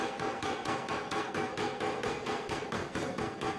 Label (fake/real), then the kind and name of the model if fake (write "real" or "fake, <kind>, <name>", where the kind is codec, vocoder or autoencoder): fake, codec, SNAC